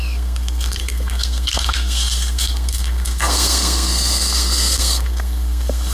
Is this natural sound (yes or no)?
no